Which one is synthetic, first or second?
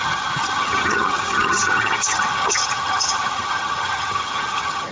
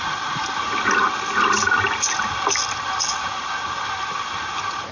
first